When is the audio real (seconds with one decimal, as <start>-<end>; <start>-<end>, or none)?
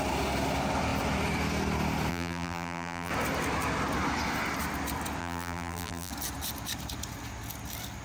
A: 0.0-2.1; 3.1-5.2; 6.1-8.0